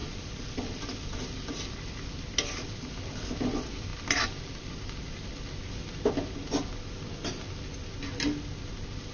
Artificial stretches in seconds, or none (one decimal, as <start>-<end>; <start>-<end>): 0.0-0.8